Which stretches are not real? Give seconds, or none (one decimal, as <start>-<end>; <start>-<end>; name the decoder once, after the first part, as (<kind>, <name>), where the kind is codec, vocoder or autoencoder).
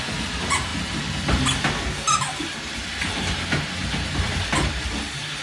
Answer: none